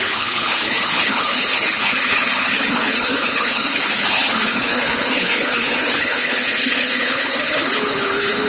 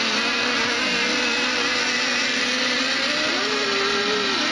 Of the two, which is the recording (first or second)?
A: second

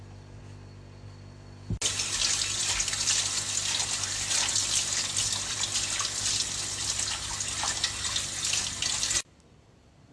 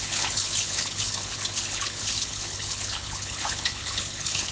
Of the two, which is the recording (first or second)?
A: first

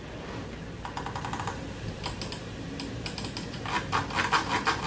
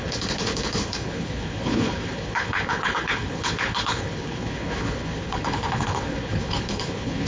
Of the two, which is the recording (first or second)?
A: first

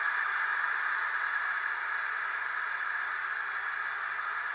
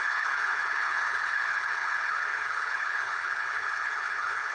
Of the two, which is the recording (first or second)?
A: first